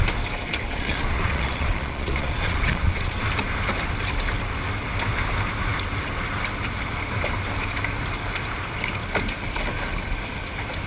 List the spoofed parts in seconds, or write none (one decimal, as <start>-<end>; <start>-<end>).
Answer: 0.5-3.2